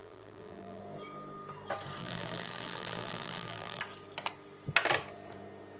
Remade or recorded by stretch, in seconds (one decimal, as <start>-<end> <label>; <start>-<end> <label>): 0.0-0.8 remade; 0.8-2.0 recorded; 2.0-3.8 remade; 3.8-5.8 recorded